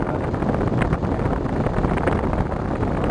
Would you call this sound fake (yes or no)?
no